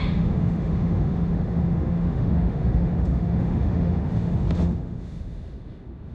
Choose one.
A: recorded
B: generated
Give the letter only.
B